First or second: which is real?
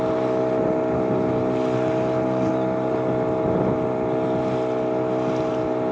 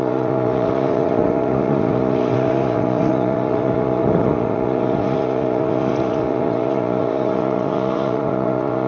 first